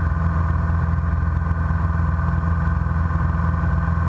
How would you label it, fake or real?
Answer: real